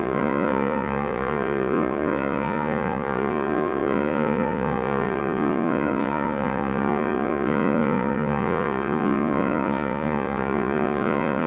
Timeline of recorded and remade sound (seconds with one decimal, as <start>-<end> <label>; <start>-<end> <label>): 0.0-11.5 remade